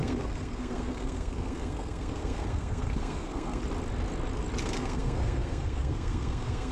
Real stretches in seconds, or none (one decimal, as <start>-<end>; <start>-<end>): 3.6-4.6